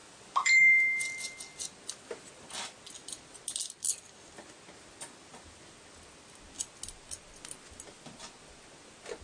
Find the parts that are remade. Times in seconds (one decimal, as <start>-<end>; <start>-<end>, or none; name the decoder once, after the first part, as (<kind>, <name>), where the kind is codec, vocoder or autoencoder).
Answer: 0.0-0.6 (vocoder, BigVGAN v2)